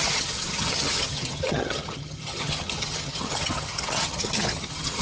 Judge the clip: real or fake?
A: fake